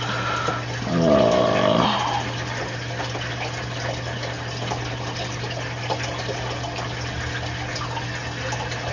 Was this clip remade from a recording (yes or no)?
no